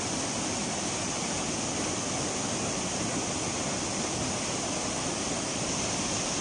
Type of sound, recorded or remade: recorded